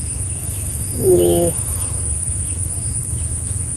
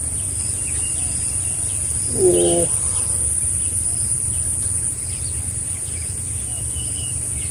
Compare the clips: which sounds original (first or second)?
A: second